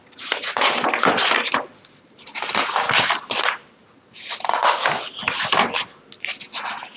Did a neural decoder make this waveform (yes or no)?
no